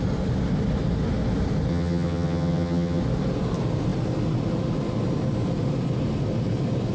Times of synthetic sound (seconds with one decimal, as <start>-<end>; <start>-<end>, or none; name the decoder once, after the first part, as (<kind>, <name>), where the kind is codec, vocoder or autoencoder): 1.7-3.0 (vocoder, HiFi-GAN)